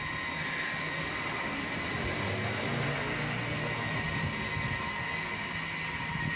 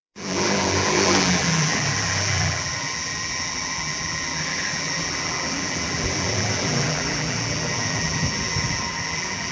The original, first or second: first